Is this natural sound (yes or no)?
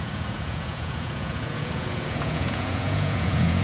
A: no